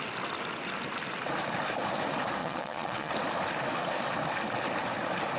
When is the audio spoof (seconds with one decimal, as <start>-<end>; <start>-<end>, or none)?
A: 2.4-3.1

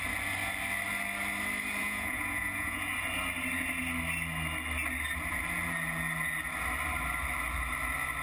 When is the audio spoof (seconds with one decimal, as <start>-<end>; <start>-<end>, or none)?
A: 1.8-2.9

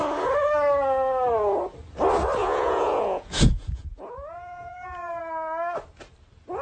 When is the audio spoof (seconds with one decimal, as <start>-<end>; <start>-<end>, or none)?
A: 2.4-5.2

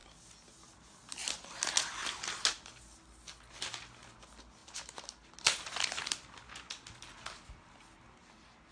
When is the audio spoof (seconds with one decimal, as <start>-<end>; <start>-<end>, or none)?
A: none

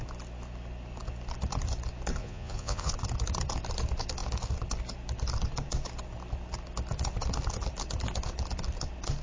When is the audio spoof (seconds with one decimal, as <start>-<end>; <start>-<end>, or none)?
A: 2.2-2.9